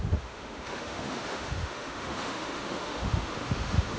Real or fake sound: fake